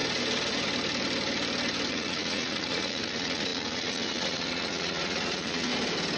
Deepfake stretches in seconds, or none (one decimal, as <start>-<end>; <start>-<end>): 1.9-5.7

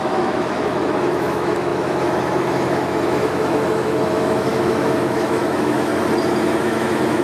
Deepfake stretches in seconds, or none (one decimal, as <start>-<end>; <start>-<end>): 0.0-5.9; 6.6-7.2

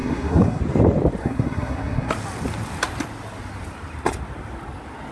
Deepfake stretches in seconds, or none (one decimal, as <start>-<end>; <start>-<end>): 0.0-0.6; 1.2-2.1

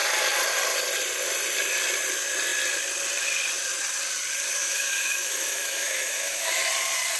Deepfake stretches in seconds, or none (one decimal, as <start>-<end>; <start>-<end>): 4.6-6.6

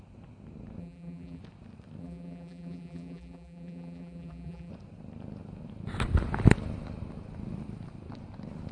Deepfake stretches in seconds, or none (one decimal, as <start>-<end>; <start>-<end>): 0.8-1.4; 2.0-4.7